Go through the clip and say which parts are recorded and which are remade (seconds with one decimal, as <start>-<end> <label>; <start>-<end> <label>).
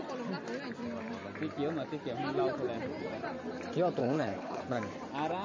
0.0-4.0 recorded; 4.0-4.6 remade; 4.6-5.4 recorded